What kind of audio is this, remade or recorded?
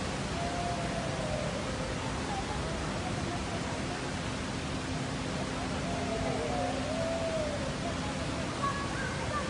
recorded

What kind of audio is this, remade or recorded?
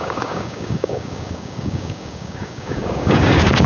remade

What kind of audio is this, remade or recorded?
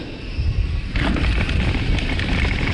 recorded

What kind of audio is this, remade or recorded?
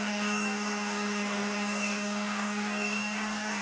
remade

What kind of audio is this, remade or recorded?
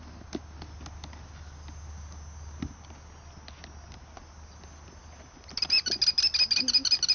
recorded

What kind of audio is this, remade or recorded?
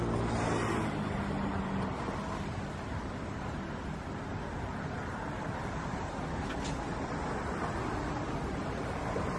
recorded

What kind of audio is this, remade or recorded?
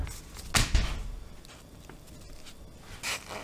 recorded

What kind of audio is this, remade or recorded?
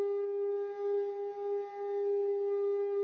recorded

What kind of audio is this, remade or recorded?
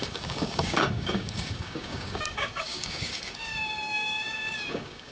remade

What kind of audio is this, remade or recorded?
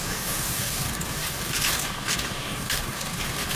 remade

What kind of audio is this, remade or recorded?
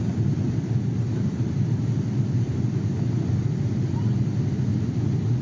recorded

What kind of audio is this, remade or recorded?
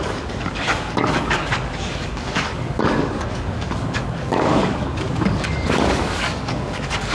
remade